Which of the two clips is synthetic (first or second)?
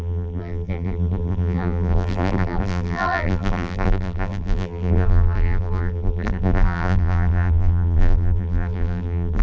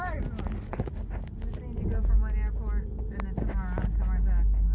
first